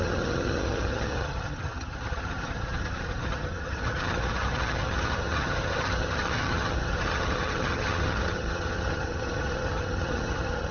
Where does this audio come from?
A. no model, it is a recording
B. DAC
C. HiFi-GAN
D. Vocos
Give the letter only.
C